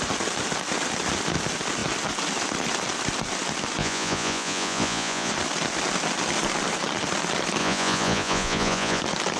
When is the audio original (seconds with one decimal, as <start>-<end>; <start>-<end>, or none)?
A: 0.0-3.8; 5.3-7.6; 9.0-9.4